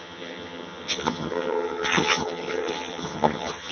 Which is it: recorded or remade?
remade